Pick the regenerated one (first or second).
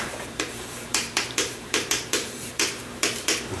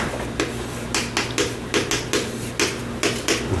first